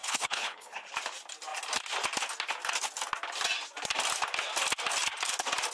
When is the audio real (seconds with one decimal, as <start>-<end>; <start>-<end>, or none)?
0.9-5.7